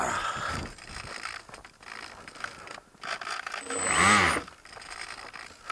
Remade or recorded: recorded